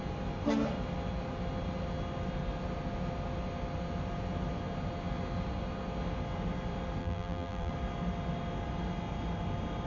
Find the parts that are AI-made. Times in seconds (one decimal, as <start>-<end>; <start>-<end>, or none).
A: 7.0-7.7